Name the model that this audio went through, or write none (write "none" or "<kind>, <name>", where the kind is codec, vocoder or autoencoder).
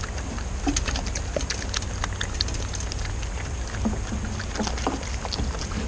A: none